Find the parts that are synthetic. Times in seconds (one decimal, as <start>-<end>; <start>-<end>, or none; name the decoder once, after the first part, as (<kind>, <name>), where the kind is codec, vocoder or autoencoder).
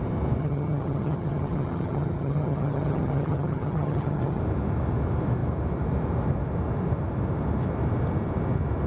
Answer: 0.4-4.4 (vocoder, HiFi-GAN)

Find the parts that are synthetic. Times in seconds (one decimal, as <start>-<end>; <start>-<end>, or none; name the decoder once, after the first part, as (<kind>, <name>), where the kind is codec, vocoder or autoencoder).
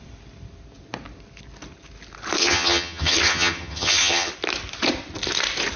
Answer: 2.4-4.3 (vocoder, HiFi-GAN)